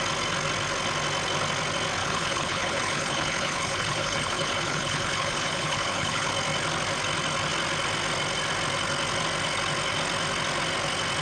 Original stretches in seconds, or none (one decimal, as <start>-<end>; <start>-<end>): 0.0-2.0; 6.3-11.2